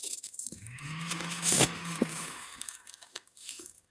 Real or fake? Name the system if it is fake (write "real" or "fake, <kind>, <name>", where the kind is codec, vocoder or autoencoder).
fake, autoencoder, DAC-VAE